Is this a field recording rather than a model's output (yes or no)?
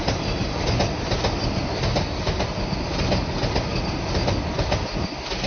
yes